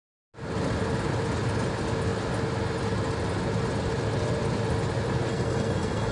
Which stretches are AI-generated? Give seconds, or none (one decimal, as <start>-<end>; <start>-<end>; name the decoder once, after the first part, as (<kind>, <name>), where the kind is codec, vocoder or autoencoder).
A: 5.3-6.1 (codec, SNAC)